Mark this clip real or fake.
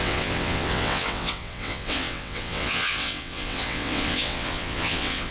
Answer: fake